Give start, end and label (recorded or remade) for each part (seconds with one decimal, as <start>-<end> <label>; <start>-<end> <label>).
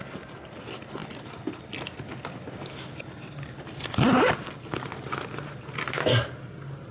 0.0-6.9 recorded